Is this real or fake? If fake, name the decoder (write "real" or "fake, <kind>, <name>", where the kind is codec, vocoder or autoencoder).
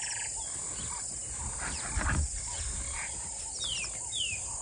real